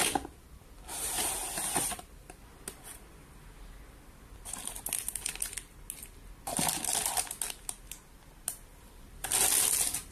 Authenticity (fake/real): real